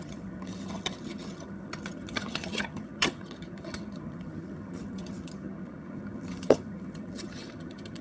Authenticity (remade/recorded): remade